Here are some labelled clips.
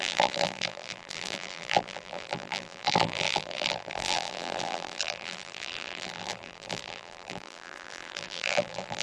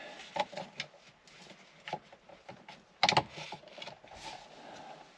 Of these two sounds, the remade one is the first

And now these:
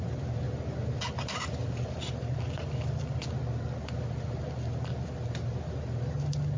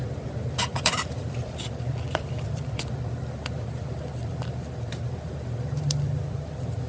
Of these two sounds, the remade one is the second